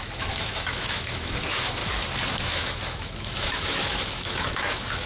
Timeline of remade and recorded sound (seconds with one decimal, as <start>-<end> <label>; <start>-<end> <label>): 0.0-1.8 remade; 1.8-2.3 recorded; 2.3-5.1 remade